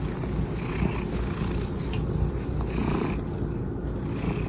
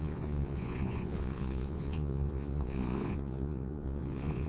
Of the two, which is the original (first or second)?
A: first